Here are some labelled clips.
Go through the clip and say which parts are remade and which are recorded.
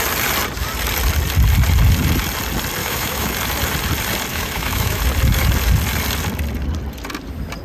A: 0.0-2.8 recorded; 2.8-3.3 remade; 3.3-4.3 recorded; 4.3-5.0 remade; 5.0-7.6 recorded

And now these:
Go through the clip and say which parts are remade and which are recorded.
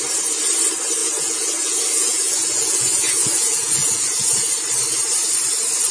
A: 0.0-1.0 recorded; 1.0-4.5 remade; 4.5-5.9 recorded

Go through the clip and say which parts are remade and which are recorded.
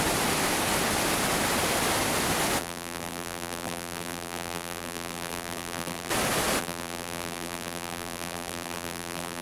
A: 0.0-2.6 recorded; 2.6-6.1 remade; 6.1-6.6 recorded; 6.6-9.4 remade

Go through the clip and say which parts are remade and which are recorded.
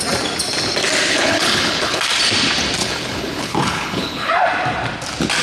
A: 0.0-1.1 recorded; 1.1-2.0 remade; 2.0-2.8 recorded; 2.8-4.3 remade; 4.3-5.4 recorded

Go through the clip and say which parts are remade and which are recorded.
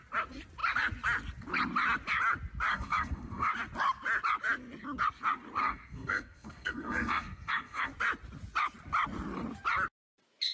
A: 0.0-2.7 recorded; 2.7-3.5 remade; 3.5-5.6 recorded; 5.6-7.9 remade; 7.9-10.5 recorded